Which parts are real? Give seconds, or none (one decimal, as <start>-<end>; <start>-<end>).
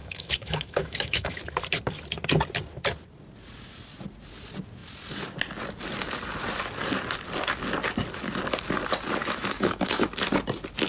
1.4-9.2; 10.1-10.9